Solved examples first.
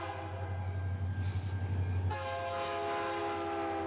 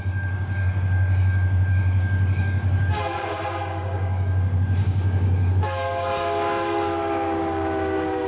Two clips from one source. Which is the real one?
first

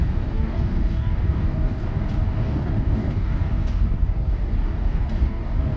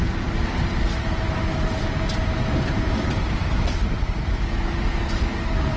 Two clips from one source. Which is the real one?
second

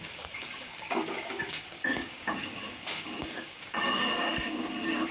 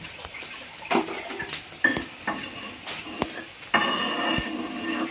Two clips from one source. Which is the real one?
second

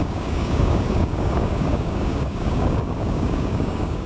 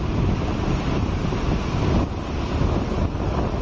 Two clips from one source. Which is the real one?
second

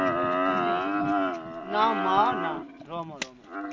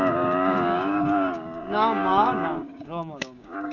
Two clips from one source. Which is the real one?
first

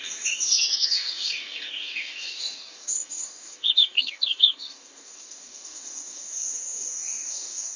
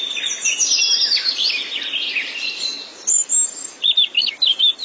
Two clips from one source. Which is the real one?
second